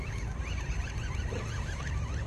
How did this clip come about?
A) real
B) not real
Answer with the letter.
A